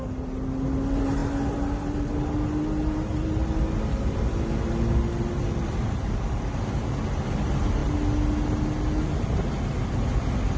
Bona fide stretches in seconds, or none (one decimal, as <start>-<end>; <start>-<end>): 0.0-10.6